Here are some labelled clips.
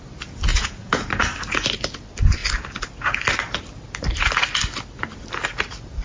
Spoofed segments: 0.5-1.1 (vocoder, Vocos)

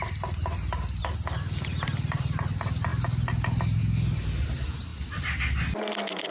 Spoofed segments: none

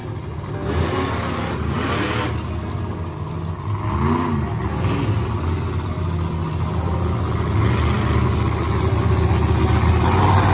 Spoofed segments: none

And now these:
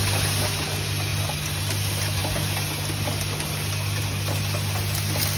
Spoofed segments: none

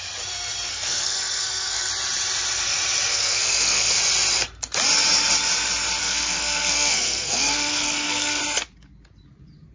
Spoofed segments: 0.7-1.9 (codec, SNAC); 3.1-4.0; 6.0-8.4

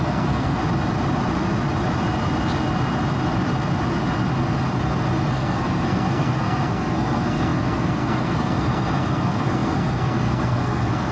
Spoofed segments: 0.0-0.6 (codec, SNAC); 5.3-11.1